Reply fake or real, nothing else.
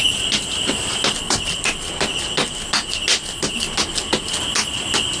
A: real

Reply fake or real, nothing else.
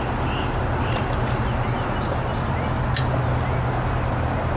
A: real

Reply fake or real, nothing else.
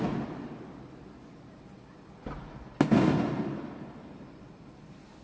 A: real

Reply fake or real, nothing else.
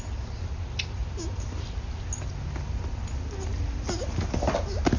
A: real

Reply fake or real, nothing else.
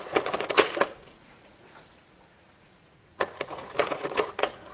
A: fake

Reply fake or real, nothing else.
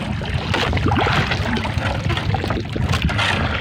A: real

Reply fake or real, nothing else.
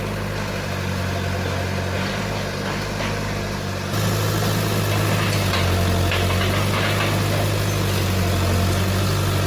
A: real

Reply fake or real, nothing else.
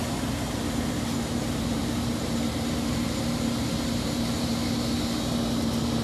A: fake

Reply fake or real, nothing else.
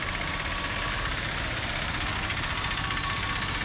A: real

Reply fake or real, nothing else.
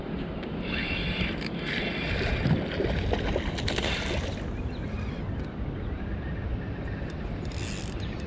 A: real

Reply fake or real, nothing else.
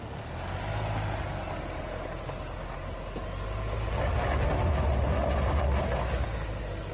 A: real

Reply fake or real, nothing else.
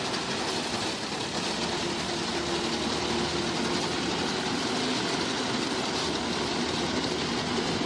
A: real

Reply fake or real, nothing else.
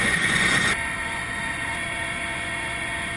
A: fake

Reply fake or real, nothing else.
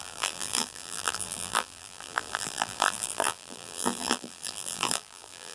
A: fake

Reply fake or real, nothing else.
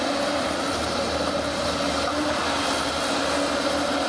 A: real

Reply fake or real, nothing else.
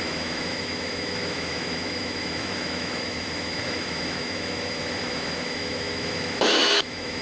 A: fake